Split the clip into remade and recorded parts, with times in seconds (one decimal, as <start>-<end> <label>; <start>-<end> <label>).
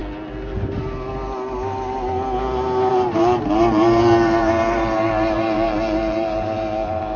0.0-2.9 recorded; 2.9-7.2 remade